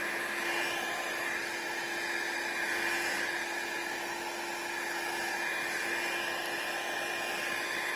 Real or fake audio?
real